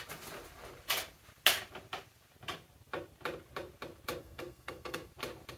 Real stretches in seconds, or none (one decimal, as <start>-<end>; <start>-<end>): 0.0-4.2; 5.1-5.6